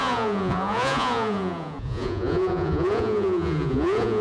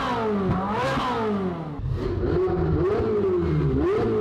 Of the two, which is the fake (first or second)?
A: first